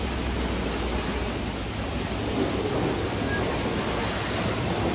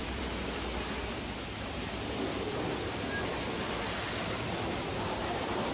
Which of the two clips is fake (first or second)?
second